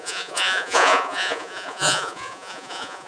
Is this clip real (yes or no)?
no